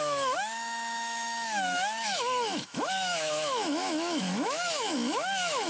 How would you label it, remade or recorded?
remade